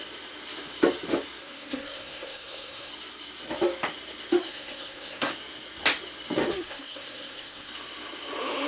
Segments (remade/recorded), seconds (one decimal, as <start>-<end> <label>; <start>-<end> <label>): 0.0-1.4 recorded; 1.4-2.9 remade; 2.9-4.4 recorded; 4.4-5.3 remade; 5.3-6.5 recorded; 6.5-7.7 remade; 7.7-8.7 recorded